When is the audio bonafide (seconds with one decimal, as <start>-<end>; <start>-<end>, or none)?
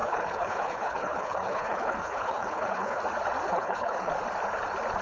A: 3.0-3.4; 4.1-5.0